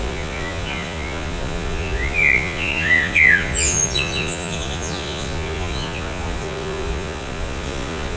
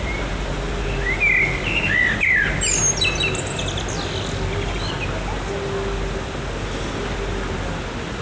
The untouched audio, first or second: second